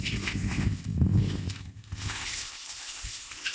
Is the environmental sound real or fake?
fake